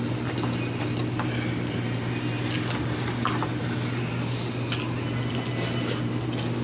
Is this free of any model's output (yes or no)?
yes